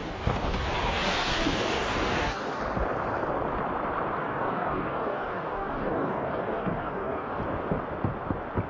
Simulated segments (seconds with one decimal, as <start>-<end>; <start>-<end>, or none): 0.0-2.6; 4.2-7.4